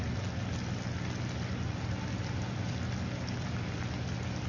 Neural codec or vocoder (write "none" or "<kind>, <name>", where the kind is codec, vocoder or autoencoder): none